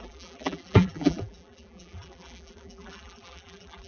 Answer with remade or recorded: remade